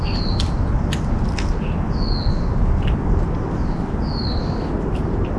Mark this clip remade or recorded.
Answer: recorded